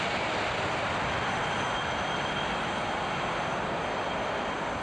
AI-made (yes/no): no